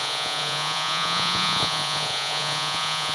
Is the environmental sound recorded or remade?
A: remade